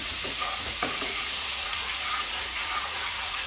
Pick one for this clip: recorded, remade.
remade